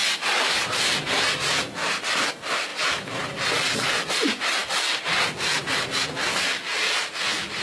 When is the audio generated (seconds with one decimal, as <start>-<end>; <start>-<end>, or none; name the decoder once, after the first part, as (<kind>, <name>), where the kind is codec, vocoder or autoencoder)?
0.0-2.3 (vocoder, BigVGAN v2); 2.7-3.5

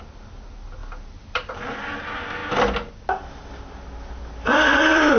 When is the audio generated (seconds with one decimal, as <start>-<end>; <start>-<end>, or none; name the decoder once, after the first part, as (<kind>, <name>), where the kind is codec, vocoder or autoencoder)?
0.0-2.4 (vocoder, BigVGAN v2); 3.3-5.2

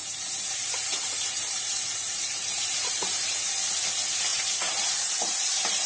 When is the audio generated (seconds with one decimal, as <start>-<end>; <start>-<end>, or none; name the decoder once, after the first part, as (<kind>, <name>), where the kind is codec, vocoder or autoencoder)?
0.0-3.5 (vocoder, BigVGAN v2); 4.3-5.9

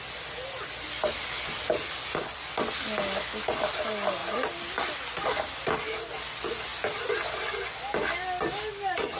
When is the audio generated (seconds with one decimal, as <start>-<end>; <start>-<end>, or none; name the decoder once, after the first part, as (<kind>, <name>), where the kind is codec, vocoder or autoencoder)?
4.2-4.7 (vocoder, BigVGAN v2)

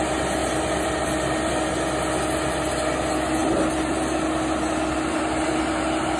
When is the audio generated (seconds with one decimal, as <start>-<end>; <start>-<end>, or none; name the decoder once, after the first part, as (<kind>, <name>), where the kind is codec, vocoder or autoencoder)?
0.4-1.5 (vocoder, BigVGAN v2)

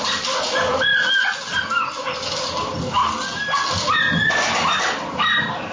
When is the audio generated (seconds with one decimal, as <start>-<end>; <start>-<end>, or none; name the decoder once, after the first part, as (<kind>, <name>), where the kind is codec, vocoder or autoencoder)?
0.0-3.0 (vocoder, BigVGAN v2); 4.8-5.7